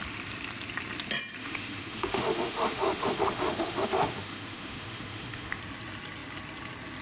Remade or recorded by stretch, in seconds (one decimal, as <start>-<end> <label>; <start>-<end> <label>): 0.0-1.4 recorded; 1.4-5.6 remade; 5.6-7.0 recorded